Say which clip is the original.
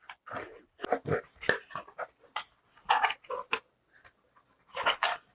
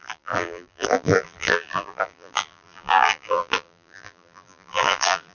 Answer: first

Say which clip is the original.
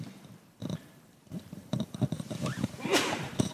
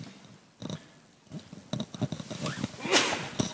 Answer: second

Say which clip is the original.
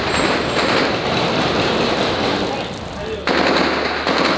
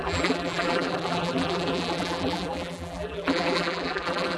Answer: first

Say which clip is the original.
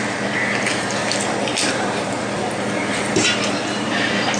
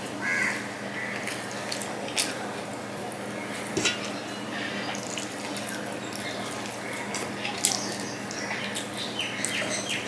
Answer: second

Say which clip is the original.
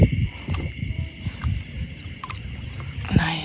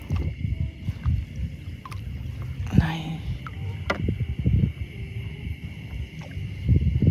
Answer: second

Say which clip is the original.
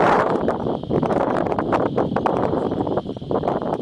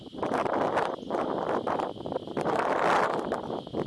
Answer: second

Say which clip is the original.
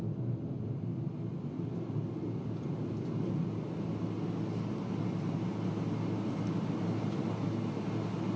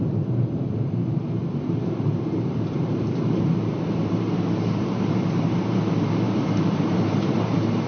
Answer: first